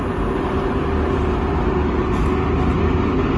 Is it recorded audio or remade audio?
recorded